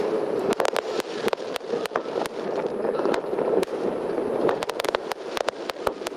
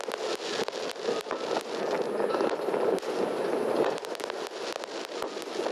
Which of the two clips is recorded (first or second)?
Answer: second